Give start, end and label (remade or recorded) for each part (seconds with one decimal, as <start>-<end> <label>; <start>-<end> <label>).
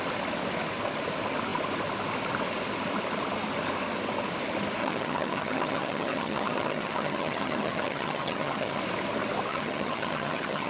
0.0-4.8 recorded; 4.8-8.8 remade; 8.8-9.5 recorded; 9.5-10.7 remade